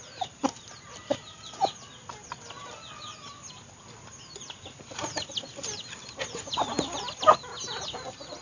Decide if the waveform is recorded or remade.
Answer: recorded